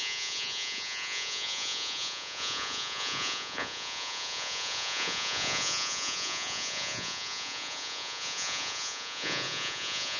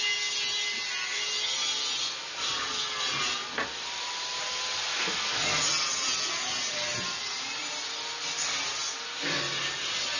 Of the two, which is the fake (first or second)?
first